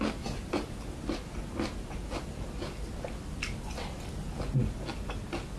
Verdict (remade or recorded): recorded